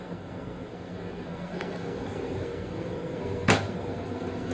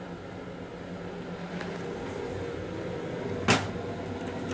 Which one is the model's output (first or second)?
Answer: first